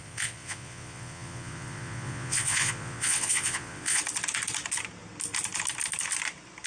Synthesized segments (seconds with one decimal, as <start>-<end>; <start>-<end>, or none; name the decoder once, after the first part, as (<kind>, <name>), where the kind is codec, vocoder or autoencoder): 0.0-4.0 (vocoder, Vocos)